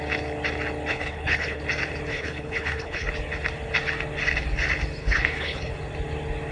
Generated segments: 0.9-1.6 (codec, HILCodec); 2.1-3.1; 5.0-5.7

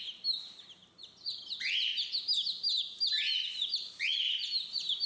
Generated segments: none

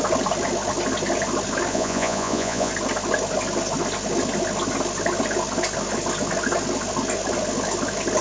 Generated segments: 1.7-2.7 (vocoder, Vocos)